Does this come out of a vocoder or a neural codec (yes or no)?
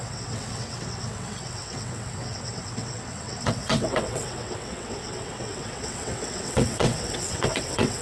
yes